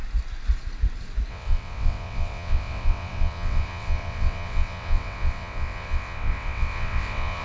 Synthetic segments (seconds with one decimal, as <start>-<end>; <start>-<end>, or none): 1.3-7.4